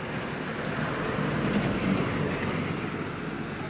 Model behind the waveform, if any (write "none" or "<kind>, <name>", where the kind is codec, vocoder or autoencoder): none